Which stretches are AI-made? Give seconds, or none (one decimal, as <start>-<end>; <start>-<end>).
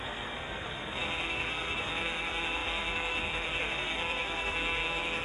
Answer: 0.0-5.2